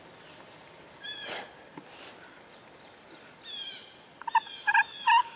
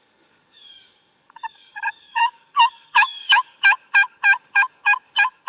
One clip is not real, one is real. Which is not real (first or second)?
second